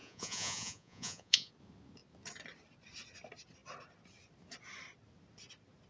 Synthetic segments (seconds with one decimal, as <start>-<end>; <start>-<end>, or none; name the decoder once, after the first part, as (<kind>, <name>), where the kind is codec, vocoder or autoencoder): 0.0-1.5 (vocoder, Vocos)